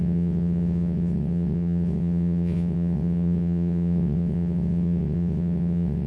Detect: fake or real fake